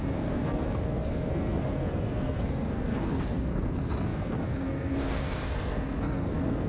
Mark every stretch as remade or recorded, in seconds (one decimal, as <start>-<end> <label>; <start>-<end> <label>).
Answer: 0.0-6.7 remade